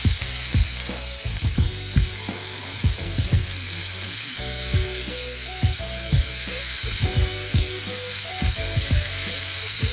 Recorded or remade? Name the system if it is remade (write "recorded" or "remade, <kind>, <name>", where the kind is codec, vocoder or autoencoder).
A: remade, codec, SNAC